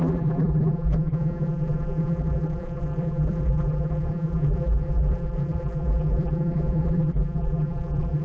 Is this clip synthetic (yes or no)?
yes